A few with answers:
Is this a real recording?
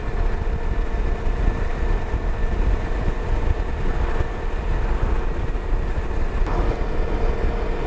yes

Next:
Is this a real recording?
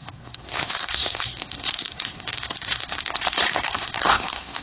no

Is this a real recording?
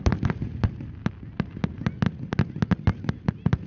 yes